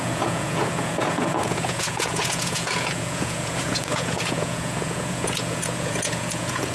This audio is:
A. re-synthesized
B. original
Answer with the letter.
A